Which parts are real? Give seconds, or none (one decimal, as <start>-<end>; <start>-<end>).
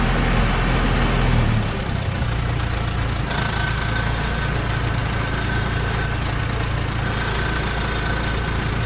0.0-8.9